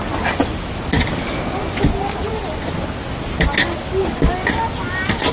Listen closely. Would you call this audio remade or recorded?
recorded